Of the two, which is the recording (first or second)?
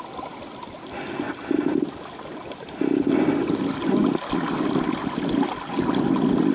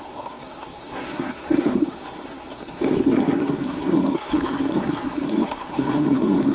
first